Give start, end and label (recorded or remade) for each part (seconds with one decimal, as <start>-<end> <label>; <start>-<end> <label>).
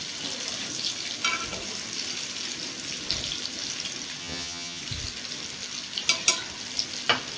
0.0-4.2 recorded; 4.2-4.8 remade; 4.8-7.4 recorded